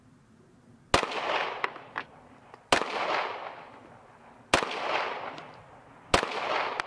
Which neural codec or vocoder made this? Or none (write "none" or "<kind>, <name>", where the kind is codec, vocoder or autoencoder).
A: none